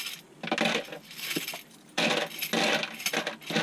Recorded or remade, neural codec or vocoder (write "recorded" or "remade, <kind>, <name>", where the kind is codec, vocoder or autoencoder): recorded